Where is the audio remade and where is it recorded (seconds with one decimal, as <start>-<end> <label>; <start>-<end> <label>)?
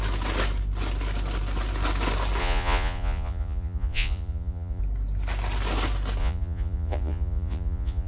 0.0-2.4 recorded; 2.4-4.8 remade; 4.8-6.2 recorded; 6.2-8.1 remade